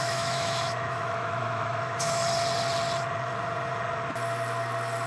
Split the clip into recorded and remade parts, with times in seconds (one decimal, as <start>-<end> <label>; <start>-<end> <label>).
0.0-2.2 remade; 2.2-5.1 recorded